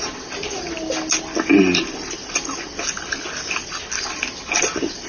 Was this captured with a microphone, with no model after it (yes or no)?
yes